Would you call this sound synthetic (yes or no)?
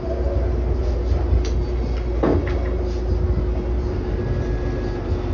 no